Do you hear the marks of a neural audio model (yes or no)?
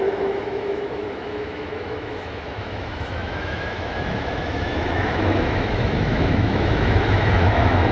yes